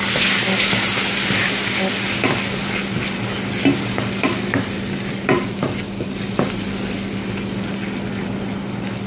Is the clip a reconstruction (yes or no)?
no